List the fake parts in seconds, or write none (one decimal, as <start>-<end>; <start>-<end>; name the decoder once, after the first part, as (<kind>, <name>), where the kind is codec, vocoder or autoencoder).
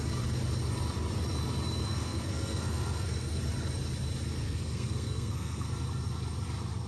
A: 1.8-3.4 (codec, SNAC); 4.4-5.7